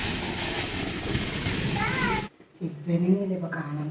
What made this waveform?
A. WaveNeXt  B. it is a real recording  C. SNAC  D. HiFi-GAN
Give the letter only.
B